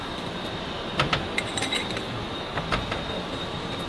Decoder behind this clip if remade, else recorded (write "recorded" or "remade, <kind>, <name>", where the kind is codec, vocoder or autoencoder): recorded